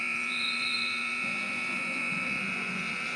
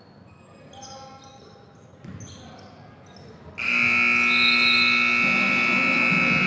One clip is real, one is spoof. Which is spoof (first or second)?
first